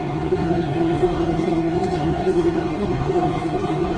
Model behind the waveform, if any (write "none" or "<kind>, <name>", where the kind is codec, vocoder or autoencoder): codec, SNAC